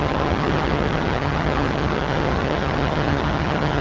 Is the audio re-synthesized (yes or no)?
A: yes